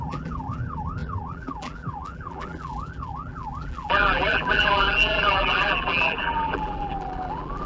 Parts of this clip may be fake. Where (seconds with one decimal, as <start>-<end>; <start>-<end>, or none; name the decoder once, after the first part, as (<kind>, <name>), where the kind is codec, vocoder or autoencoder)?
0.0-7.7 (vocoder, BigVGAN v2)